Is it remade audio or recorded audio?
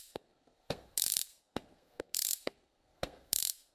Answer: remade